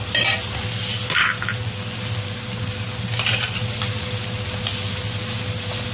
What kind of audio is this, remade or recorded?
recorded